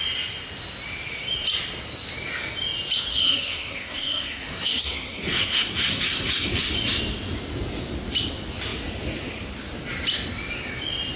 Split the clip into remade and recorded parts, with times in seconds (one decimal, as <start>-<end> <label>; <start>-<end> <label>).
0.0-3.1 recorded; 3.1-6.5 remade; 6.5-11.2 recorded